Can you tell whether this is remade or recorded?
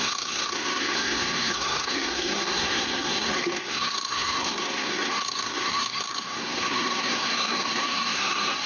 remade